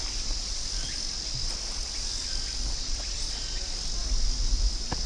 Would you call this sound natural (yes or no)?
yes